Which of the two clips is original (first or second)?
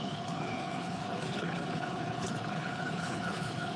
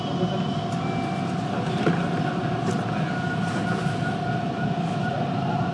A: second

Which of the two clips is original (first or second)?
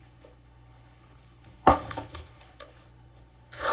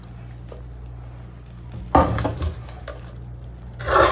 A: second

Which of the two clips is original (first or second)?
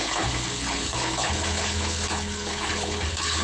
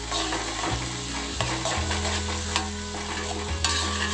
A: second